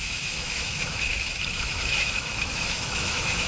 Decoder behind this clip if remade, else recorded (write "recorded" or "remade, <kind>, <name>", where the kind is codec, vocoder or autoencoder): remade, autoencoder, DAC-VAE